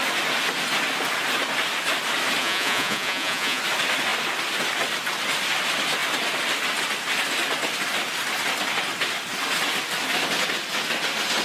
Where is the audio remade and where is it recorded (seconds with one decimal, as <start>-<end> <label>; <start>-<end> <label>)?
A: 0.0-2.4 recorded; 2.4-3.6 remade; 3.6-11.4 recorded